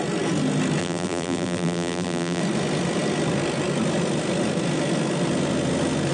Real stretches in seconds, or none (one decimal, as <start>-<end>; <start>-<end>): 0.0-0.8; 2.4-6.1